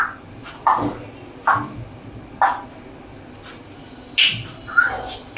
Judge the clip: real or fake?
real